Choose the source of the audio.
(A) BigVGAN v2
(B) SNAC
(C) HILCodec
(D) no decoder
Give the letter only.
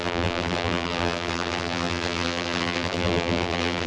A